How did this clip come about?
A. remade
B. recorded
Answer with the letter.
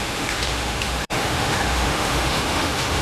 A